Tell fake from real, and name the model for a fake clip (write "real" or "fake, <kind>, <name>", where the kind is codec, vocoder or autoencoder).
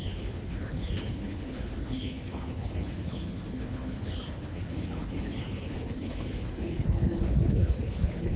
fake, codec, HILCodec